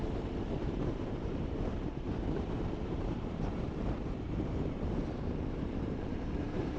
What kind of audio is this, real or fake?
fake